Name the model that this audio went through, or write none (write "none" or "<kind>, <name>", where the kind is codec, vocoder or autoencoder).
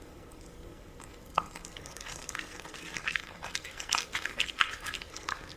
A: codec, SNAC